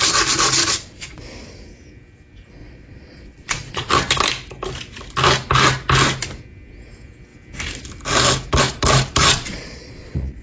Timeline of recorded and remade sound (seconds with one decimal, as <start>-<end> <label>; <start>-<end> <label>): 0.0-0.6 recorded; 0.6-1.2 remade; 1.2-2.6 recorded; 2.6-3.9 remade; 3.9-9.2 recorded; 9.2-10.4 remade